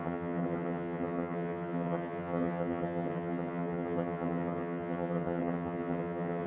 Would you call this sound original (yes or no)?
no